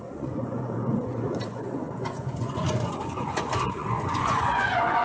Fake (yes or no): yes